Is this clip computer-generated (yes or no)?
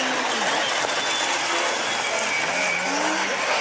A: no